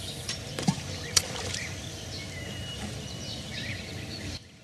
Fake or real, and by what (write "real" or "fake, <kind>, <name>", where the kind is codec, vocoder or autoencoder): fake, vocoder, BigVGAN v2